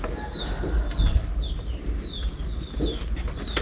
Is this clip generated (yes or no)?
no